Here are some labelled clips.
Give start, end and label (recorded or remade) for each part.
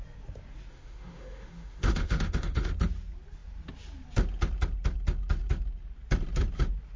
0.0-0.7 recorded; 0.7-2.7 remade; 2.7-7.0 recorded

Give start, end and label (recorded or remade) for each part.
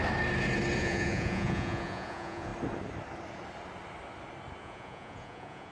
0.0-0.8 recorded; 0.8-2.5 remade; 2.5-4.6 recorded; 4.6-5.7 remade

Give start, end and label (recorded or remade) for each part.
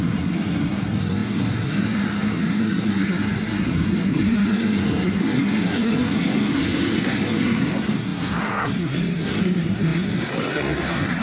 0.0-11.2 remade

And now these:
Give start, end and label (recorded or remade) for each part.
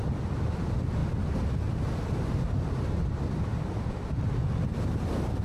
0.0-5.4 recorded